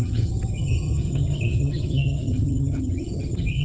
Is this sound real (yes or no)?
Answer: no